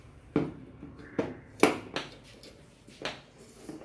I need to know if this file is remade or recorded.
recorded